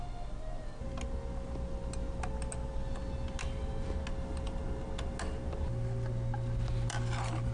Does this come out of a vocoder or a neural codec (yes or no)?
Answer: no